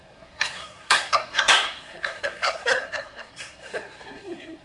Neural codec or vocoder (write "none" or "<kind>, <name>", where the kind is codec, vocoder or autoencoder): codec, SNAC